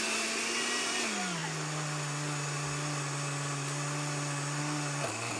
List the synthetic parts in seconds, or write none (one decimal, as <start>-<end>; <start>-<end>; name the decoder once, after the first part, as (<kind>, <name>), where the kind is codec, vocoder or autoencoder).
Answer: none